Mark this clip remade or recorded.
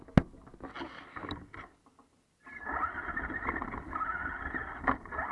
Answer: recorded